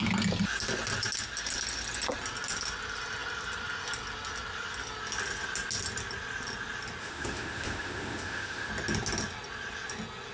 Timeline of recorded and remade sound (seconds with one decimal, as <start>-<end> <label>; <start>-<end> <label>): 0.0-7.0 recorded; 7.0-8.7 remade; 8.7-10.3 recorded